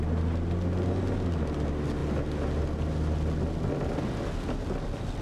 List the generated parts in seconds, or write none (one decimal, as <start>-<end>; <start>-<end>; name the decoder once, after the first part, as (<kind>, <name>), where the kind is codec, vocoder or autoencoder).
none